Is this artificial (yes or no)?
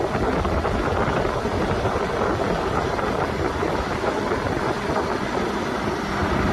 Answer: no